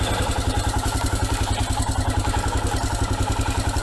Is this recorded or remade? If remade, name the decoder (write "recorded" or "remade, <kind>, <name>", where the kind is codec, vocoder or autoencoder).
recorded